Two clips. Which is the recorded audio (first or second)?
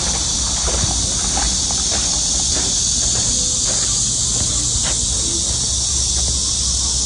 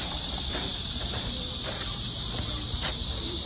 first